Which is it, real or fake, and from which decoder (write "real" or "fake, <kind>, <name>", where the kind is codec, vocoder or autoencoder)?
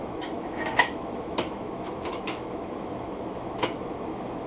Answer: fake, autoencoder, DAC-VAE